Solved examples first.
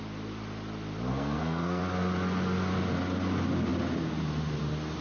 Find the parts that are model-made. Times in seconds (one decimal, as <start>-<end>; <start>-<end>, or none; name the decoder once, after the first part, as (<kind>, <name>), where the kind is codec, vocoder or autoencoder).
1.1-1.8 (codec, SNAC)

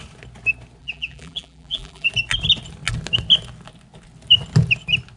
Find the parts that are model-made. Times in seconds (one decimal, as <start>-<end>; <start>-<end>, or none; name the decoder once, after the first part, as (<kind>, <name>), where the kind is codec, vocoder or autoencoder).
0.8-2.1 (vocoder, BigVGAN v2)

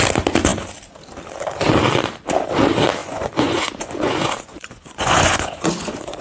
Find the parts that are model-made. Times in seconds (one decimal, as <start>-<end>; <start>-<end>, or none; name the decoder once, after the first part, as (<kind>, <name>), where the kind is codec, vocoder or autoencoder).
3.0-6.2 (vocoder, Vocos)

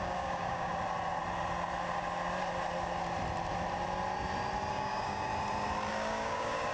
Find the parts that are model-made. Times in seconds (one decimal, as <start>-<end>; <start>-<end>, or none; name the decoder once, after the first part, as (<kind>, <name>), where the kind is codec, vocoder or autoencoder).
0.0-0.7 (codec, DAC); 4.7-5.3; 5.9-6.7

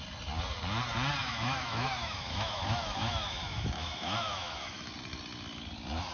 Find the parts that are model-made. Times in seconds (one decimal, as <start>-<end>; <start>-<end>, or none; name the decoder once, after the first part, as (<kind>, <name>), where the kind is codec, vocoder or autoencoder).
1.2-4.9 (autoencoder, DAC-VAE)